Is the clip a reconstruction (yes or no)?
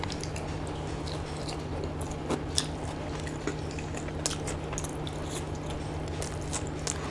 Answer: no